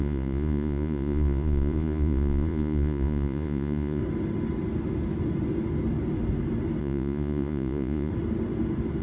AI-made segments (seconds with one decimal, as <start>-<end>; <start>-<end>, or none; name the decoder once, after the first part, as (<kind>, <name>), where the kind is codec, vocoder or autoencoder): 0.0-4.0 (vocoder, Vocos); 6.8-8.1